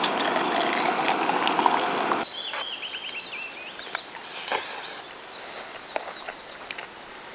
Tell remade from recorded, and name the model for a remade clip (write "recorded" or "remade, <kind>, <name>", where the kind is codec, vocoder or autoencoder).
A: recorded